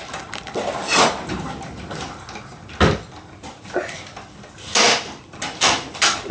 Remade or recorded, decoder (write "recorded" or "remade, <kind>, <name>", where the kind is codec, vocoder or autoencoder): recorded